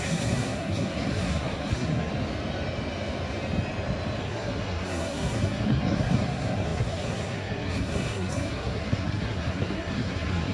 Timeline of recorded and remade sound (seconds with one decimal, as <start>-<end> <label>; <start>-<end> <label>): 0.0-2.1 remade; 2.1-4.2 recorded; 4.2-10.5 remade